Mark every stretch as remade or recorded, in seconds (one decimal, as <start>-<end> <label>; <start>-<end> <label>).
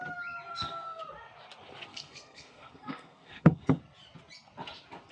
0.0-0.5 recorded; 0.5-1.0 remade; 1.0-1.9 recorded; 1.9-3.8 remade; 3.8-5.1 recorded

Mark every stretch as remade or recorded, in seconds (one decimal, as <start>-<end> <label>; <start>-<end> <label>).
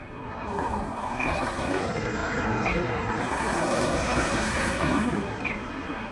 0.0-6.1 remade